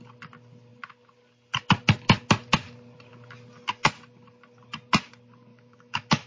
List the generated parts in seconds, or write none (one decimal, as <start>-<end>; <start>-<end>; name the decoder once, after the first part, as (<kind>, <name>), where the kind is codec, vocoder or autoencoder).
5.5-6.3 (autoencoder, DAC-VAE)